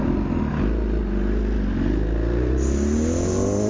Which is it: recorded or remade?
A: recorded